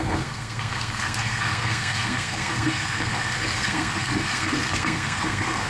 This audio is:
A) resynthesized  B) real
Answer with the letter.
A